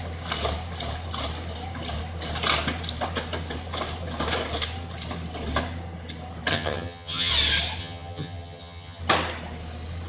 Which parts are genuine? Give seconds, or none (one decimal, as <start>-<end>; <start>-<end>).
0.0-6.5; 7.3-7.8; 9.0-10.1